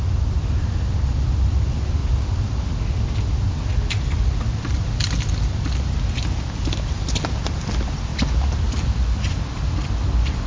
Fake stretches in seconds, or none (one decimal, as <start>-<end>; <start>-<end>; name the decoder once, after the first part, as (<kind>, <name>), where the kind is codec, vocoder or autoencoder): 8.1-10.5 (vocoder, BigVGAN v2)